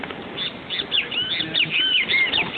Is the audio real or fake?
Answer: real